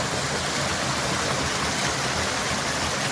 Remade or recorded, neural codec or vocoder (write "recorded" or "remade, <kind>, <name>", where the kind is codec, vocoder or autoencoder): recorded